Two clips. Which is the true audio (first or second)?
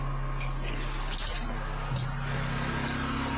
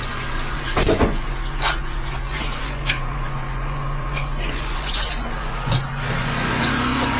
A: first